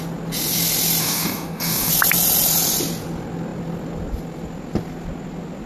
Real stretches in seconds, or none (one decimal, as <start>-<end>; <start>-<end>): 0.0-1.0; 1.9-5.7